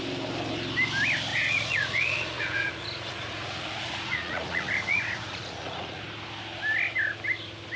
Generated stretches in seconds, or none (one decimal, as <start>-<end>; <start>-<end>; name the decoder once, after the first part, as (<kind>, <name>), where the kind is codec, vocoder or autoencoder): 1.3-6.0 (vocoder, Vocos)